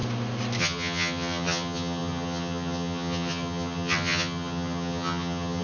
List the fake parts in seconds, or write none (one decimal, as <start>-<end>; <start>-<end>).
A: 0.6-5.6